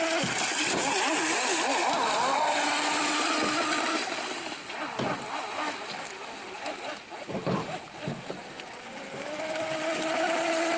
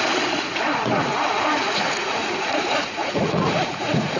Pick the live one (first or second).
first